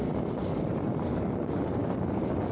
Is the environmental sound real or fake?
real